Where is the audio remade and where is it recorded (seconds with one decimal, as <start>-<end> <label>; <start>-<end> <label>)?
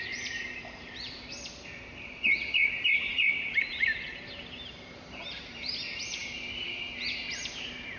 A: 0.0-8.0 remade